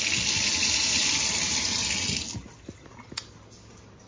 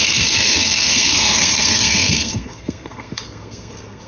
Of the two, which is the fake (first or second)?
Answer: second